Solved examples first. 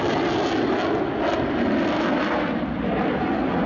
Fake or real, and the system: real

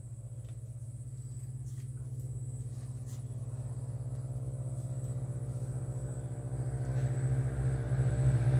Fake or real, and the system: real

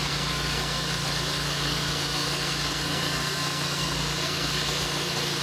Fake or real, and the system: fake, codec, SNAC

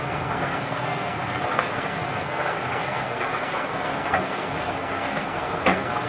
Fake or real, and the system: fake, codec, SNAC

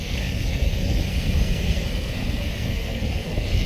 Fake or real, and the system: fake, codec, SNAC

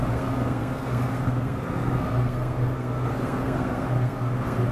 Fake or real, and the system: fake, codec, SNAC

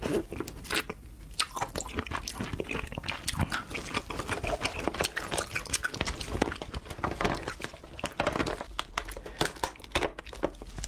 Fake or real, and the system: real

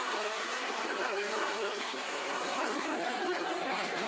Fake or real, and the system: fake, codec, SNAC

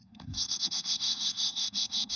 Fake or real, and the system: fake, codec, SNAC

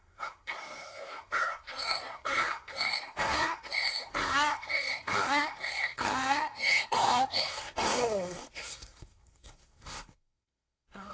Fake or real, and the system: fake, codec, SNAC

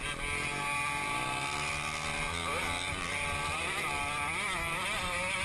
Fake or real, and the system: real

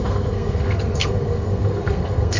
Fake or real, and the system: fake, codec, SNAC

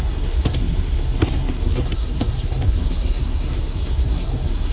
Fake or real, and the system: fake, codec, SNAC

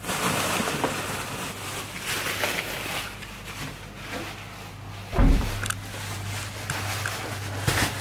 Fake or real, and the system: real